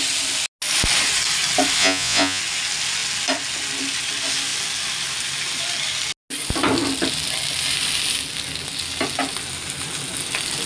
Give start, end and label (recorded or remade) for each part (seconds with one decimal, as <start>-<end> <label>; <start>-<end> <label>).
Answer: 0.0-1.8 recorded; 1.8-2.4 remade; 2.4-10.7 recorded